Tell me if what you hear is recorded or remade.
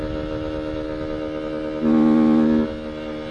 recorded